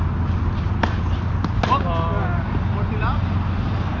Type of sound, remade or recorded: recorded